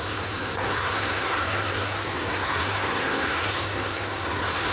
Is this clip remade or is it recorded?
remade